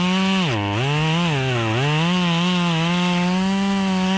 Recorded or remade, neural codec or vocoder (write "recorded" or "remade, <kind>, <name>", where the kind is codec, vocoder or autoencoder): recorded